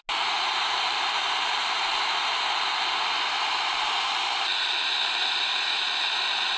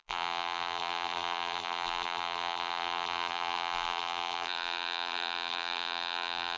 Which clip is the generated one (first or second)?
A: second